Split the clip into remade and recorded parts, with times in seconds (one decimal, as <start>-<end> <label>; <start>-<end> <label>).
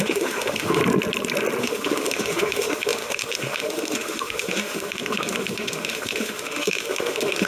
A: 0.0-0.8 remade; 0.8-1.6 recorded; 1.6-7.5 remade